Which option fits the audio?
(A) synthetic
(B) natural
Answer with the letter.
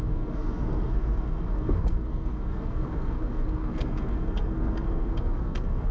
A